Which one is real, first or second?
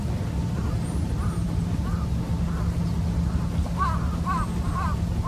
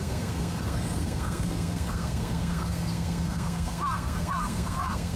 first